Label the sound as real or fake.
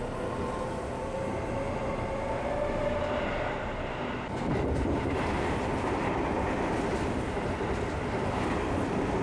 real